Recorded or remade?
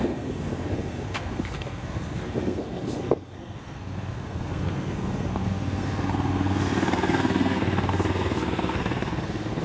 remade